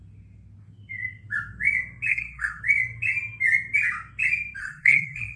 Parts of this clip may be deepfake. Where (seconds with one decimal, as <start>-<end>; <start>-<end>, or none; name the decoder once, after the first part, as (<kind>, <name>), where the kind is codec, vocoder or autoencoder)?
2.1-2.6 (codec, SNAC); 4.6-5.4